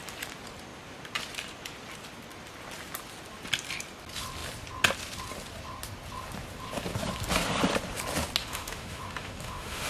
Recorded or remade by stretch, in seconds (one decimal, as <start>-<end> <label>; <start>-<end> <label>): 0.0-8.4 recorded; 8.4-9.9 remade